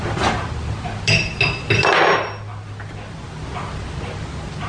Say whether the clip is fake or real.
real